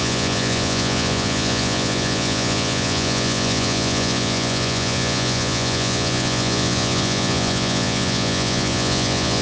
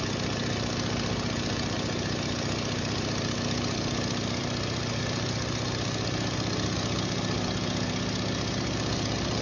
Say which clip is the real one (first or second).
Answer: second